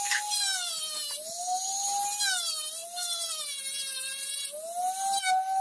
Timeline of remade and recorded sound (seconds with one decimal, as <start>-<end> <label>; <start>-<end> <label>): 0.0-5.6 recorded